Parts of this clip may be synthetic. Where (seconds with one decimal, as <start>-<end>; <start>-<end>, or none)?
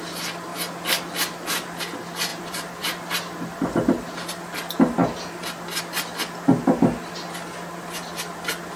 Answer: 2.3-4.1